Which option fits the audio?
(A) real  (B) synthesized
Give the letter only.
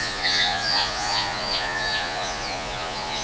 B